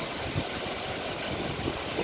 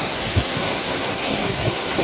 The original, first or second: first